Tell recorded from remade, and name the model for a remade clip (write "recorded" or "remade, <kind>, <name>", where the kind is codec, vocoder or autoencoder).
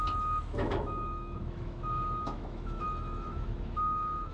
remade, autoencoder, DAC-VAE